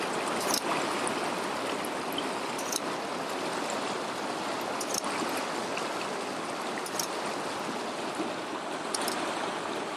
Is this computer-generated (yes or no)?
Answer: no